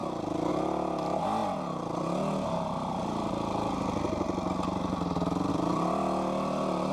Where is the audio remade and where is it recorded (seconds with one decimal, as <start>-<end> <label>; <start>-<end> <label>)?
0.0-0.5 recorded; 0.5-1.4 remade; 1.4-5.5 recorded; 5.5-6.9 remade